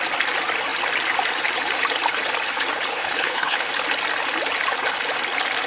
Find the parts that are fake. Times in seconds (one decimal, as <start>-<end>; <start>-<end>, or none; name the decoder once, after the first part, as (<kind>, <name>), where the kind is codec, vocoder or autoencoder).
2.9-3.7 (codec, HILCodec)

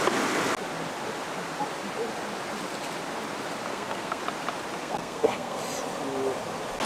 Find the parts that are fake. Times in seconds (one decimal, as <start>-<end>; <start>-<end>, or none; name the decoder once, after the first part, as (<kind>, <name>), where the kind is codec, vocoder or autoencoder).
3.7-4.2 (codec, SNAC); 4.8-5.6